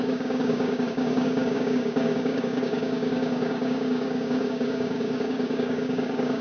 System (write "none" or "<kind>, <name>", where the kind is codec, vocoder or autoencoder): codec, DAC